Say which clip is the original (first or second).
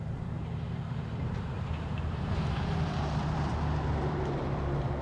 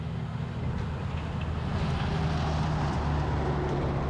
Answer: second